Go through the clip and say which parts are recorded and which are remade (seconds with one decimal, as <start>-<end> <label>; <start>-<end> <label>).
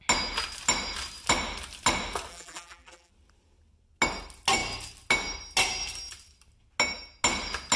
0.0-2.3 recorded; 2.3-3.1 remade; 3.1-7.8 recorded